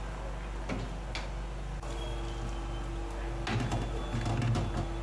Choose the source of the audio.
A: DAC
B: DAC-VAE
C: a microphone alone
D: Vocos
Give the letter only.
C